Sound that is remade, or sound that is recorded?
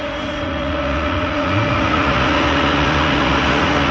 remade